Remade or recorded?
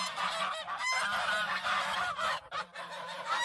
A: remade